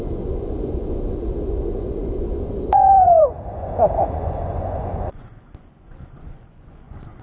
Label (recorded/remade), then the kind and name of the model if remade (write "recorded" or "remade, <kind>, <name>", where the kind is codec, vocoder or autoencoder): remade, vocoder, Vocos